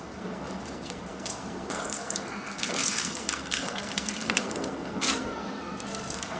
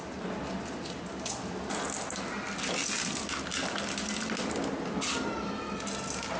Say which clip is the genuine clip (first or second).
second